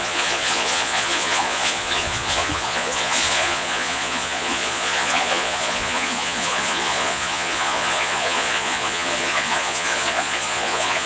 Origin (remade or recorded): remade